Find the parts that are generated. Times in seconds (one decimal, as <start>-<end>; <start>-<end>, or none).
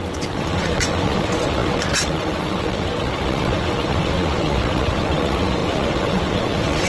0.0-6.9